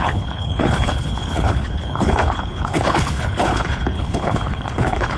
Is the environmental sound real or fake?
fake